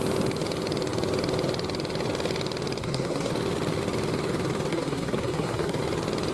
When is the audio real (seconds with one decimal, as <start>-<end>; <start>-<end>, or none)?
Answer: 0.0-2.8; 3.3-4.7; 5.8-6.3